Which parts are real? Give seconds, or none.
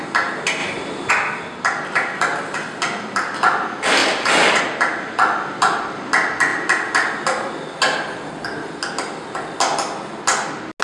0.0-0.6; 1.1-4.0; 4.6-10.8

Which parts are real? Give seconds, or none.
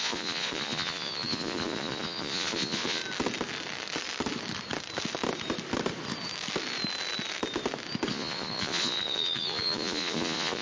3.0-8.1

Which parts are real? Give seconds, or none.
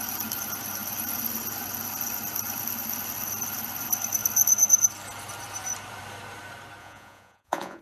0.0-6.8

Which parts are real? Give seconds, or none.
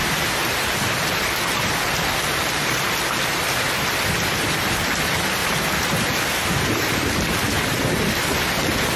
0.0-5.4; 5.9-9.0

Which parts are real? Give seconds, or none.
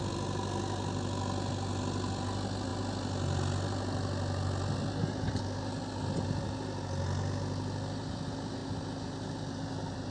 0.0-10.1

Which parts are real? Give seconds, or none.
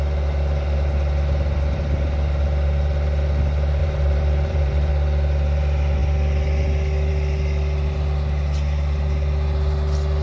0.0-3.8; 4.9-10.2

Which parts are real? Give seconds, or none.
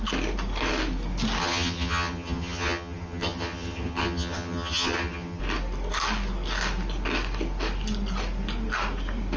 0.0-1.4; 5.4-9.4